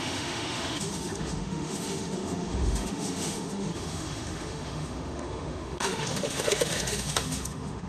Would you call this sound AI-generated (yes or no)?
yes